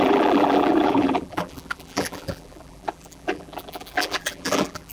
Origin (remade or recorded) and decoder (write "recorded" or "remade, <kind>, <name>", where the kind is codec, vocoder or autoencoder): remade, vocoder, BigVGAN v2